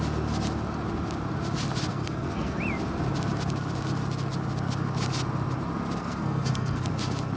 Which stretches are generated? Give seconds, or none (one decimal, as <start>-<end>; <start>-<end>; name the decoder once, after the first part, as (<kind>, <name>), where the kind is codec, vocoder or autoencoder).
1.9-2.6 (codec, SNAC); 6.0-6.9